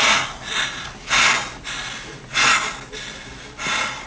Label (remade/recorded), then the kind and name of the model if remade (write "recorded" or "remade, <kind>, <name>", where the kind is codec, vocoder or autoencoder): recorded